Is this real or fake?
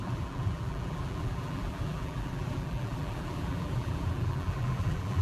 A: fake